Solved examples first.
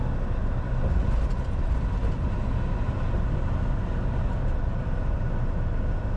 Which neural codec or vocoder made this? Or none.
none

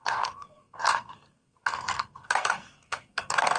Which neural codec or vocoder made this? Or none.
codec, SNAC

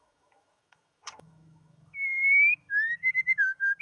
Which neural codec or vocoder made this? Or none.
autoencoder, DAC-VAE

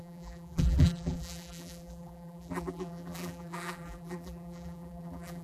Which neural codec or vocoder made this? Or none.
vocoder, BigVGAN v2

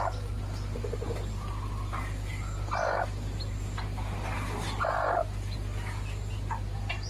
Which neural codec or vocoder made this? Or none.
none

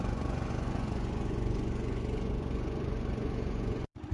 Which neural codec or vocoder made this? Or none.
vocoder, Vocos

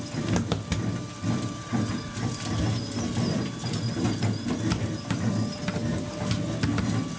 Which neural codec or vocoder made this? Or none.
none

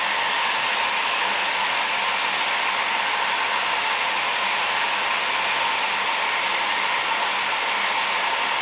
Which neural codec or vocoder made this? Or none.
none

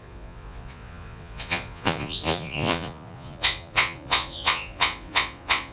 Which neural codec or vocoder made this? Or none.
vocoder, Vocos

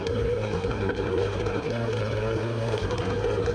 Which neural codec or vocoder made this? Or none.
codec, SNAC